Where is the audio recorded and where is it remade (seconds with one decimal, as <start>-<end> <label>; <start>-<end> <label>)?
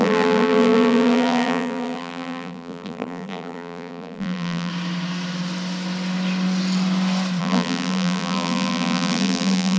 0.0-4.7 remade; 4.7-7.4 recorded; 7.4-9.8 remade